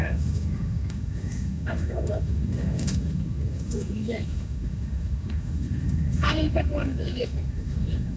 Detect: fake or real fake